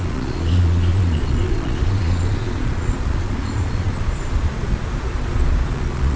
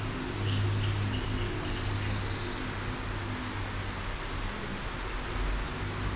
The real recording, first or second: second